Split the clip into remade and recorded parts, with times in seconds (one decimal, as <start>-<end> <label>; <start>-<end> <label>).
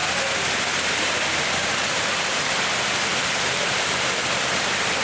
0.0-5.0 recorded